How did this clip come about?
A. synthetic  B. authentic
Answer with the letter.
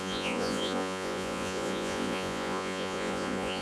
A